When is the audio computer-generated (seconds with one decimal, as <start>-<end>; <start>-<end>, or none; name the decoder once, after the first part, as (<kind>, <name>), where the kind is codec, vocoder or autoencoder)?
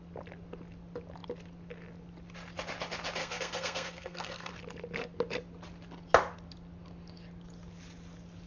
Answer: 3.2-4.5 (codec, SNAC)